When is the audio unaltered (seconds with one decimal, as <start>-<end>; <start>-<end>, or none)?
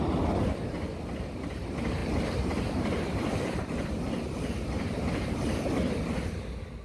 0.0-2.0; 4.2-4.9; 5.7-6.8